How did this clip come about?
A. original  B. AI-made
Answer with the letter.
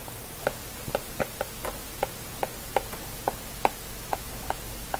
A